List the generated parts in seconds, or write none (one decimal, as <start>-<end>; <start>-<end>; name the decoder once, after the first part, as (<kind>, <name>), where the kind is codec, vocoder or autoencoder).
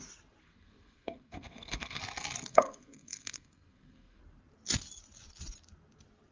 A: 0.4-2.0 (codec, SNAC); 2.5-4.2